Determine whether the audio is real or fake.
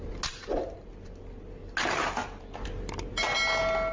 real